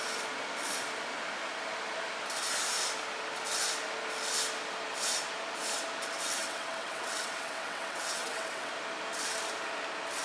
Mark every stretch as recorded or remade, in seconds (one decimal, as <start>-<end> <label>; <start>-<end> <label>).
0.0-6.4 recorded; 6.4-8.7 remade; 8.7-10.2 recorded